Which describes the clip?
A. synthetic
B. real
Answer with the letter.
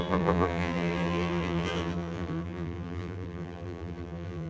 A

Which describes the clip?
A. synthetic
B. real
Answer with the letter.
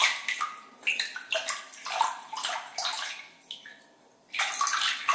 B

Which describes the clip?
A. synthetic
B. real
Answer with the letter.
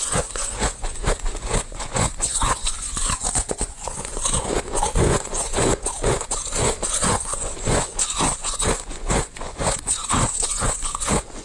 A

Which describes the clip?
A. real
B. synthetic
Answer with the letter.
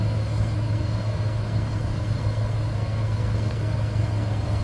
B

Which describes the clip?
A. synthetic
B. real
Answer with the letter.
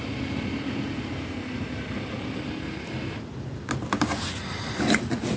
B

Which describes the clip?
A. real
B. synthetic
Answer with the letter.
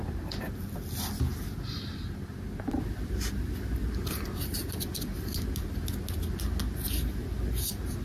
A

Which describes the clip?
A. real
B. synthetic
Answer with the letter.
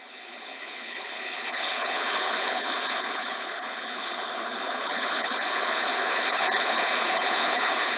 B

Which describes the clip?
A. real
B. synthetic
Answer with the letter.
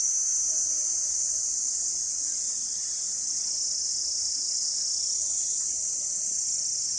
A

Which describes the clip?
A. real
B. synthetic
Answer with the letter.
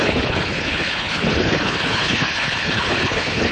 B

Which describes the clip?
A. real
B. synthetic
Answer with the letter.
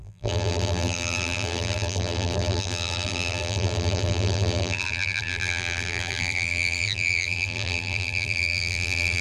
B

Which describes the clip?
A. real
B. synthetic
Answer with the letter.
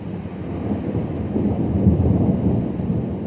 A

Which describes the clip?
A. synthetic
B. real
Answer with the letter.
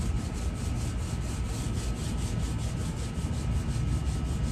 B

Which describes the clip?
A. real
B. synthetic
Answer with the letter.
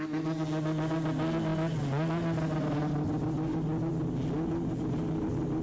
A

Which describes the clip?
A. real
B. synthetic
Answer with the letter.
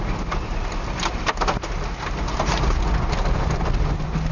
A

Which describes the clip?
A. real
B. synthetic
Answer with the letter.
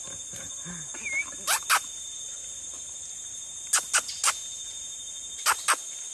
A